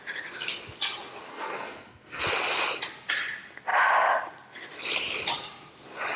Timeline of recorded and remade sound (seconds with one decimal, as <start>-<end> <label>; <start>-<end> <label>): 0.0-1.3 recorded; 1.3-2.2 remade; 2.2-6.2 recorded